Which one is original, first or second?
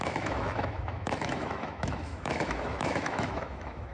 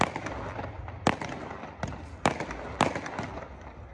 second